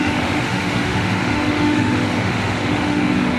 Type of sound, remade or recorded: remade